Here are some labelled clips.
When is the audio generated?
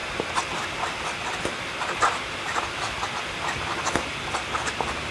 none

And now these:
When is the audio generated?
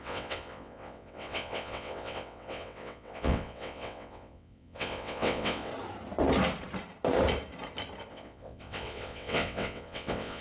0.0-5.7 (vocoder, WaveNeXt); 8.1-10.4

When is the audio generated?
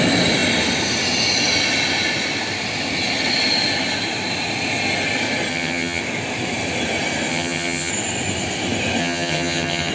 5.5-6.0 (vocoder, HiFi-GAN); 7.3-7.9; 9.0-9.9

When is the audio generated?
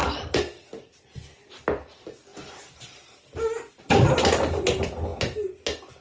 none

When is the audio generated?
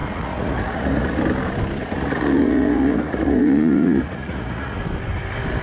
0.0-1.2 (vocoder, Vocos); 1.8-4.8